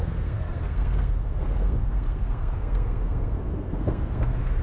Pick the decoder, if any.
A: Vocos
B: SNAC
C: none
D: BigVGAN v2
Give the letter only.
B